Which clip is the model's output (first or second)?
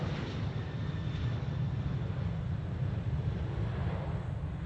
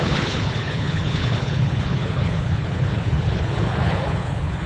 second